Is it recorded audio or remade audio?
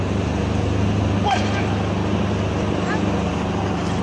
recorded